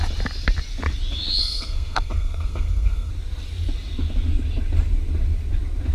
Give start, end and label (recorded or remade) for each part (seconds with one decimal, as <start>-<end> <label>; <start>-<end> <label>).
0.0-1.4 recorded; 1.4-3.1 remade; 3.1-5.9 recorded

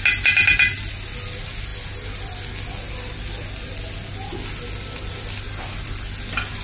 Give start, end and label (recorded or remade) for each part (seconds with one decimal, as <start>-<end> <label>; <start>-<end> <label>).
0.0-6.6 recorded

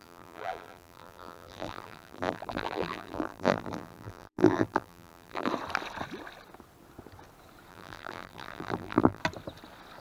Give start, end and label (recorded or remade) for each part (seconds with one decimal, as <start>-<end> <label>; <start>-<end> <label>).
0.0-5.5 remade; 5.5-7.7 recorded; 7.7-9.2 remade; 9.2-10.0 recorded

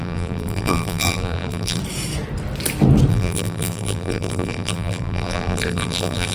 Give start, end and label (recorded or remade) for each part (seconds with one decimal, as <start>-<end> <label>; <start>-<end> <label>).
0.0-1.8 remade; 1.8-3.1 recorded; 3.1-6.3 remade

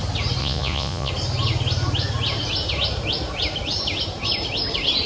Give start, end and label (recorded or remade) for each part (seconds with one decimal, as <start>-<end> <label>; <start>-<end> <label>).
0.0-0.4 recorded; 0.4-1.1 remade; 1.1-5.1 recorded

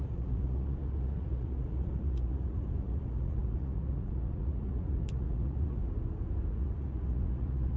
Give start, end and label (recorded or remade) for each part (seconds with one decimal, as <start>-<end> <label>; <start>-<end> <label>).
0.0-5.8 remade; 5.8-6.5 recorded; 6.5-7.8 remade

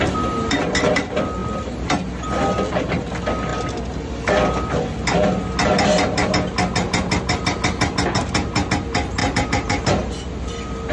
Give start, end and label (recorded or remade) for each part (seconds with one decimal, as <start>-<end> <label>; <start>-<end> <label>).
0.0-9.2 recorded; 9.2-10.5 remade; 10.5-10.9 recorded